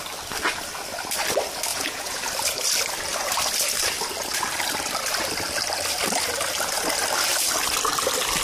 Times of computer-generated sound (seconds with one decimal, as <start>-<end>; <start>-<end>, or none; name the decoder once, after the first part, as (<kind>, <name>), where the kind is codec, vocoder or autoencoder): 1.7-2.2 (vocoder, Vocos)

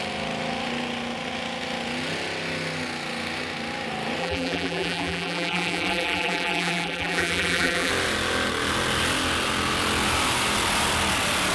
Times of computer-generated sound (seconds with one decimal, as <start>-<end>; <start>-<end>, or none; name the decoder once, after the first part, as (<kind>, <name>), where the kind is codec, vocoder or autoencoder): 4.2-7.9 (vocoder, BigVGAN v2)

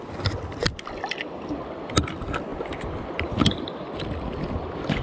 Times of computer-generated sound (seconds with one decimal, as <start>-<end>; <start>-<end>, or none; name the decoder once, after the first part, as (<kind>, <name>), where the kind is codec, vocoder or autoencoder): none

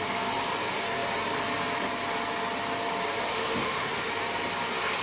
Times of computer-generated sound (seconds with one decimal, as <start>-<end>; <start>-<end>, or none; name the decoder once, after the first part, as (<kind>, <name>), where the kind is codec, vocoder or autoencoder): 3.2-4.1 (autoencoder, DAC-VAE)